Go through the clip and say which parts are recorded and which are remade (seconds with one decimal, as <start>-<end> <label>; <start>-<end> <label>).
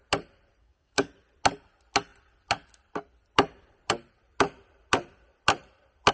0.0-0.6 recorded; 0.6-1.1 remade; 1.1-6.1 recorded